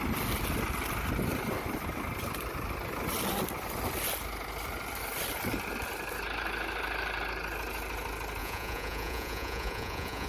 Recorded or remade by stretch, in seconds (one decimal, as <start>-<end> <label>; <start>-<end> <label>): 0.0-8.4 recorded; 8.4-10.3 remade